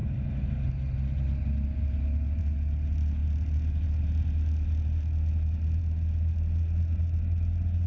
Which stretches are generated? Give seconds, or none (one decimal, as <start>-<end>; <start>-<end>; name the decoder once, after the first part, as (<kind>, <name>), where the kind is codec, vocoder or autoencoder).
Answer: none